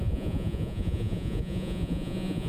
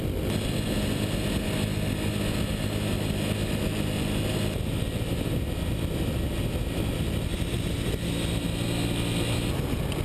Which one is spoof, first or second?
first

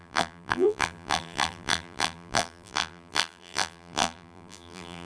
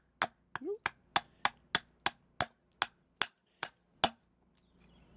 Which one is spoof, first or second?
first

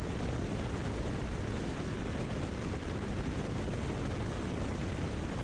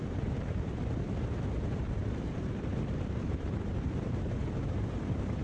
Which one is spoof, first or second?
second